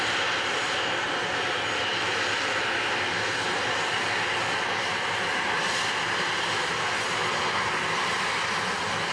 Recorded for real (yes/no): yes